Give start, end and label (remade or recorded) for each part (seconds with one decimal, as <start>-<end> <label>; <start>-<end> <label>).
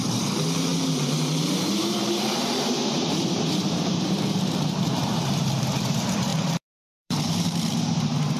0.0-8.4 remade